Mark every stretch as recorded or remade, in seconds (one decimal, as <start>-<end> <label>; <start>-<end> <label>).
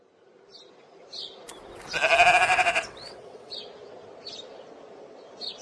0.0-2.5 recorded; 2.5-3.5 remade; 3.5-5.6 recorded